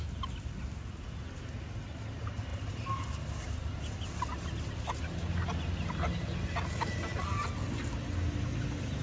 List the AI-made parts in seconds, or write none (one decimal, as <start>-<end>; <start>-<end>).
2.5-3.1